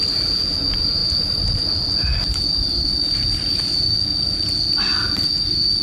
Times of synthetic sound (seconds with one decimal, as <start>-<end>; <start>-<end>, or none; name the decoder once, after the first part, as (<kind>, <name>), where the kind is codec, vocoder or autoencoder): none